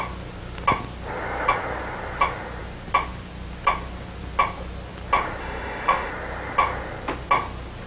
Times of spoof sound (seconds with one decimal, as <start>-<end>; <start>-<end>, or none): 5.4-6.1